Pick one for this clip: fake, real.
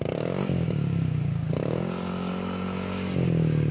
fake